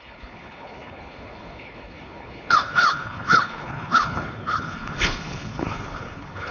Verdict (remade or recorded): remade